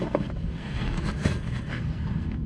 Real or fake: fake